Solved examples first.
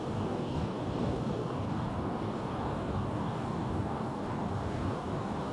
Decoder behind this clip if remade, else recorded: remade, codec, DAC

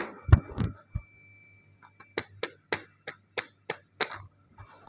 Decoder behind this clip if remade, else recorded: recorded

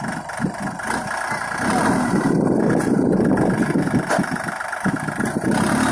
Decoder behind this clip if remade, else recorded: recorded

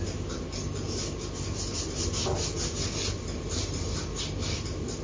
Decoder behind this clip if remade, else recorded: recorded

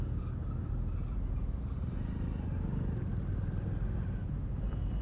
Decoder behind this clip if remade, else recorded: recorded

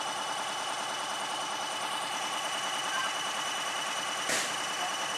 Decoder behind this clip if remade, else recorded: recorded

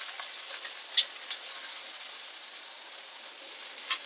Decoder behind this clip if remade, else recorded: recorded